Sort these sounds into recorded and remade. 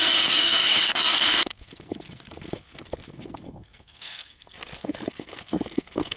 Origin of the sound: remade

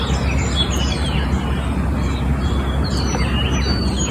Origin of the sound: recorded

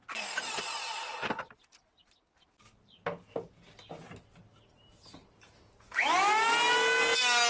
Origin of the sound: recorded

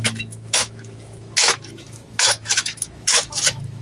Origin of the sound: remade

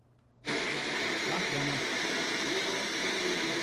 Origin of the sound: remade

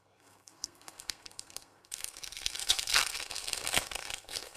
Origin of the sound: remade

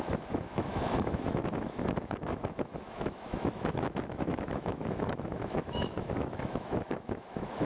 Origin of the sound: remade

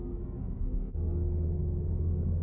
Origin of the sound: remade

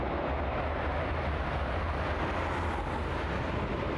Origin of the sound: recorded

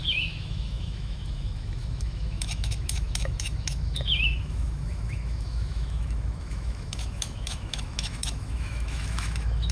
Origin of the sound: remade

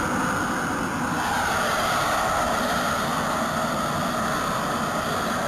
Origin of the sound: recorded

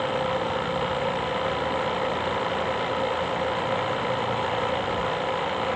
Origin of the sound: recorded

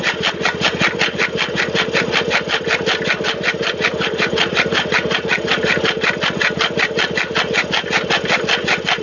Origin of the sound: recorded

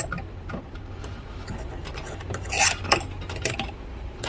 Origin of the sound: recorded